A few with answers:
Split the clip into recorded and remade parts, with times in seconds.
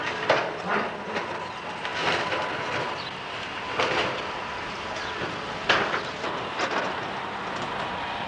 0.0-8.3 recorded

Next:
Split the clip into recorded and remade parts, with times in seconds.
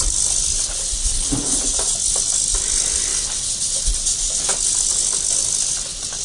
0.0-1.0 recorded; 1.0-1.6 remade; 1.6-6.2 recorded